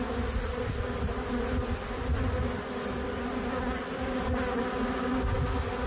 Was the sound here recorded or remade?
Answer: recorded